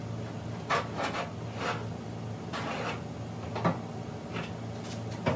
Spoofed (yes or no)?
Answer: no